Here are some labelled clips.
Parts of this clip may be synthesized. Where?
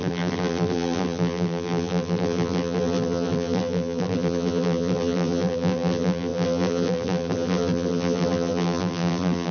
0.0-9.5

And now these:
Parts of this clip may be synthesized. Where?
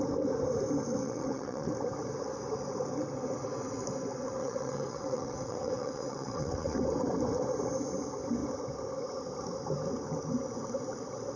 1.0-1.7; 4.4-6.8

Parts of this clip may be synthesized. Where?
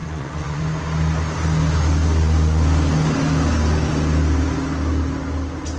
0.0-0.6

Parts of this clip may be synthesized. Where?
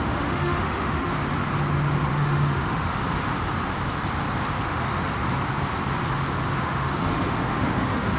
0.0-1.1; 2.1-3.0; 4.6-5.1; 6.6-8.2